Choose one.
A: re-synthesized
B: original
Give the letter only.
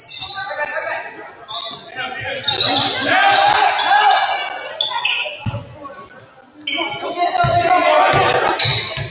B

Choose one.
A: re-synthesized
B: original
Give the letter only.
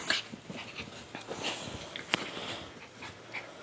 B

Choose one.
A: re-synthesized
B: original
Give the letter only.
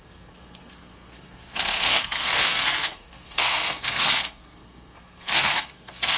A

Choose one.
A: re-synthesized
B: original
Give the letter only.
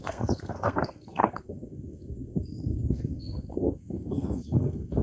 A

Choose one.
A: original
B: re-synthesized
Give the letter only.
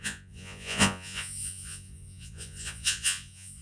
B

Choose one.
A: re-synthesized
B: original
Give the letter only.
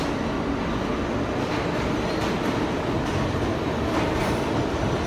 B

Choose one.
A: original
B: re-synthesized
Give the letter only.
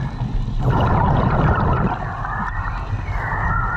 A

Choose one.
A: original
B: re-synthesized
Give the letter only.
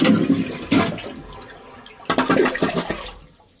A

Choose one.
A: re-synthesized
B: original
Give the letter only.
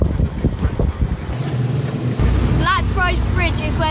B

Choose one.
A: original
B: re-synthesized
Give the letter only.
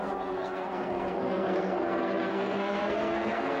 B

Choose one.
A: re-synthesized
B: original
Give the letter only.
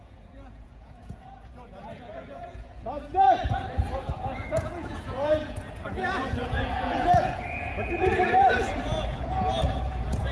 A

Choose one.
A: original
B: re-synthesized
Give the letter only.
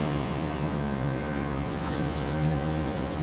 B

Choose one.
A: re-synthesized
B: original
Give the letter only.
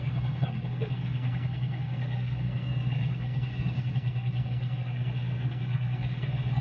A